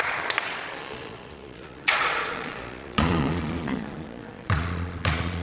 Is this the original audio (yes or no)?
no